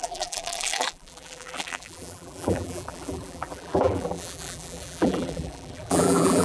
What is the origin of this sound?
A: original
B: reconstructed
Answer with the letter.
B